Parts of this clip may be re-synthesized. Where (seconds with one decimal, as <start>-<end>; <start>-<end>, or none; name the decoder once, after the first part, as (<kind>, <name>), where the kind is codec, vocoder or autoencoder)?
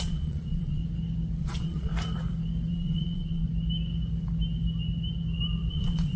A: 0.0-0.8 (vocoder, Vocos); 1.4-1.9; 2.7-3.4; 5.7-6.2